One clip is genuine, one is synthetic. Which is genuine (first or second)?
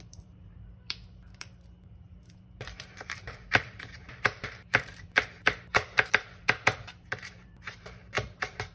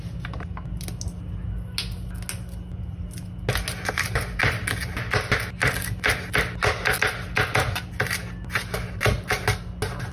second